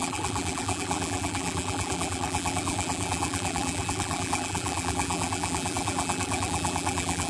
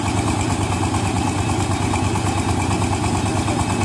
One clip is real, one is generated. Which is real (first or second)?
second